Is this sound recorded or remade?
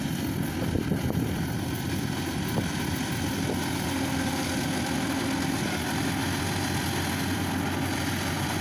recorded